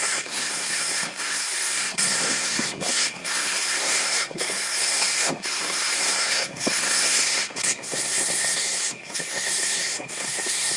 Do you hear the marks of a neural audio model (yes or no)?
yes